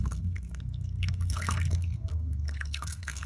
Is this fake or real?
fake